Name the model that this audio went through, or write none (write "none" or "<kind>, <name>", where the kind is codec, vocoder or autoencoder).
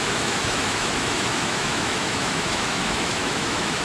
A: autoencoder, DAC-VAE